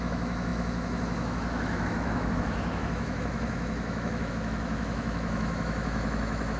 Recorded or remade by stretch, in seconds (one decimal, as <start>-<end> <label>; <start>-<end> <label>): 0.0-6.6 remade